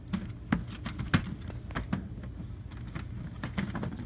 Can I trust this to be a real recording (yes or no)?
yes